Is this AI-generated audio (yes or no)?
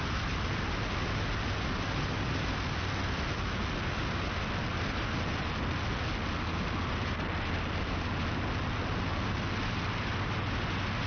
no